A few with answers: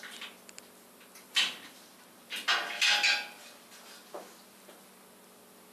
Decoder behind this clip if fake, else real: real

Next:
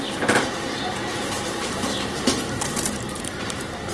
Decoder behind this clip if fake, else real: fake, vocoder, BigVGAN v2